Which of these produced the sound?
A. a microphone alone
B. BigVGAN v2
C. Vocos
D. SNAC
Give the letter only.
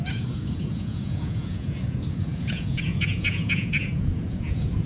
C